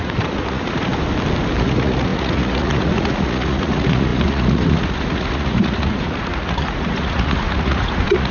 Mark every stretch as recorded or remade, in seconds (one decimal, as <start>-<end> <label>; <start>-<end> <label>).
0.0-0.9 remade; 0.9-1.6 recorded; 1.6-8.3 remade